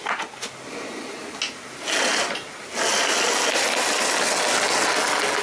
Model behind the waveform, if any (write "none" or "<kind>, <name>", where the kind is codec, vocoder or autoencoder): none